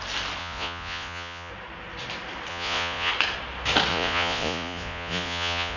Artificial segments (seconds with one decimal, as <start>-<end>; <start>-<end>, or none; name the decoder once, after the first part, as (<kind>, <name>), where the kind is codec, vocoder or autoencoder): 0.4-1.5 (vocoder, Vocos); 2.5-3.1; 3.9-5.8